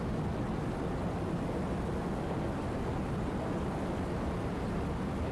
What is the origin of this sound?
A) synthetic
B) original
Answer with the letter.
B